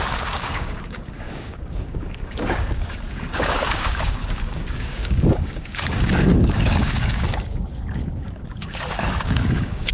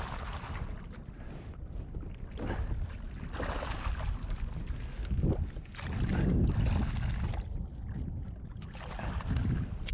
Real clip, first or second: second